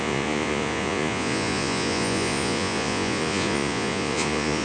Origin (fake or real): fake